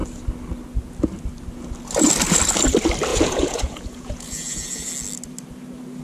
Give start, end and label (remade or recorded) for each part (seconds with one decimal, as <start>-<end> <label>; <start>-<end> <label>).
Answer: 0.0-3.1 recorded; 3.1-4.9 remade; 4.9-6.0 recorded